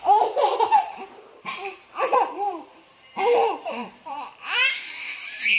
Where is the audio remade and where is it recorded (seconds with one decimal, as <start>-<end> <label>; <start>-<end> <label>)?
0.0-5.6 remade